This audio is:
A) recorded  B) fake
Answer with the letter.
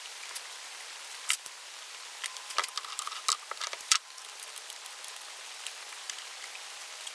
A